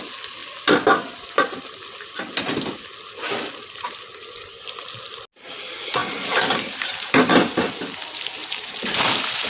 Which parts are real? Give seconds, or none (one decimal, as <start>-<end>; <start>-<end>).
0.0-6.0; 7.6-8.4; 9.0-9.5